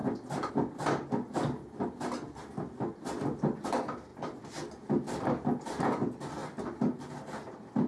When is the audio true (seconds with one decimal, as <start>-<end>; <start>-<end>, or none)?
0.0-6.4; 7.1-7.9